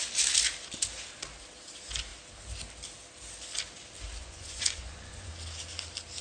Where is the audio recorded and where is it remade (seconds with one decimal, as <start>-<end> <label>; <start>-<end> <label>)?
0.0-4.2 recorded; 4.2-5.3 remade; 5.3-6.2 recorded